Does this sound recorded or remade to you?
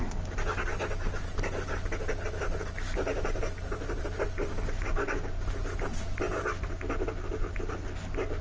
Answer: recorded